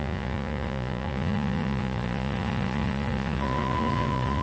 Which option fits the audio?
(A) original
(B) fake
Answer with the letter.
B